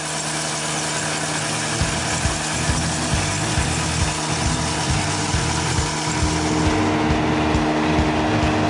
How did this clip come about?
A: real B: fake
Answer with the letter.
A